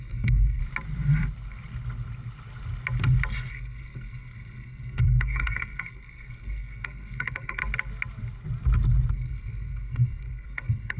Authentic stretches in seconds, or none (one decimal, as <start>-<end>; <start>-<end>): 0.6-3.5; 7.6-9.1